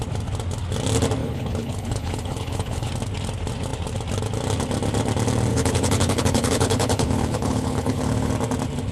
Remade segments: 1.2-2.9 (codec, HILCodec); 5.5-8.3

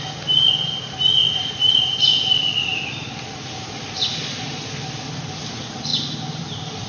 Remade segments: 1.2-3.1 (vocoder, BigVGAN v2)

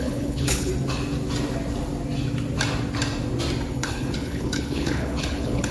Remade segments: 0.0-0.7 (codec, HILCodec); 3.7-5.7

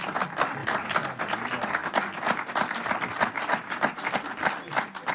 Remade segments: none

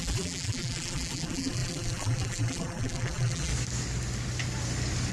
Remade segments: 0.0-3.5 (vocoder, BigVGAN v2)